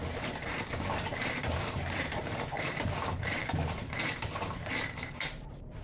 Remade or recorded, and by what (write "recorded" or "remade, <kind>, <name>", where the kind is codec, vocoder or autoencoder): remade, vocoder, BigVGAN v2